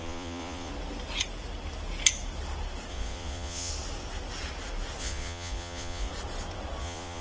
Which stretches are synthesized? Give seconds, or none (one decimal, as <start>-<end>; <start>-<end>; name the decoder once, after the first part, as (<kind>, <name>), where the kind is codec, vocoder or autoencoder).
0.0-0.7 (vocoder, Vocos); 2.9-3.7; 5.0-6.1; 6.8-7.2